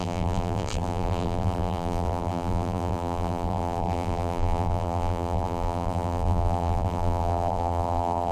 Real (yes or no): no